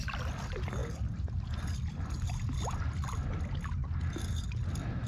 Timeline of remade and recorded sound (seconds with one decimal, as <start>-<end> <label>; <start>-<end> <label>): 0.0-5.1 recorded

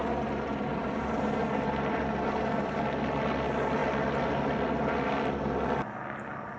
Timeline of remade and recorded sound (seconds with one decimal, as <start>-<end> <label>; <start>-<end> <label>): 0.0-0.7 recorded; 0.7-2.8 remade; 2.8-6.6 recorded

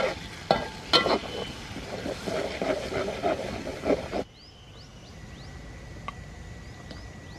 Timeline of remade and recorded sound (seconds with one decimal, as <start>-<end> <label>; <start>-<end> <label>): 0.0-7.4 recorded

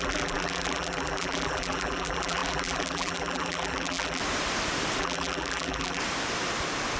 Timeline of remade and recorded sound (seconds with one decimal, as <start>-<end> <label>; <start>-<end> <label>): 0.0-4.2 remade; 4.2-5.0 recorded; 5.0-6.0 remade; 6.0-7.0 recorded

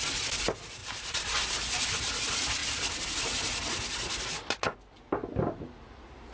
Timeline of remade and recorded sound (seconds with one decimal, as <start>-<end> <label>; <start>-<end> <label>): 0.0-0.8 recorded; 0.8-1.8 remade; 1.8-6.3 recorded